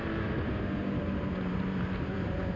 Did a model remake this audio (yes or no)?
yes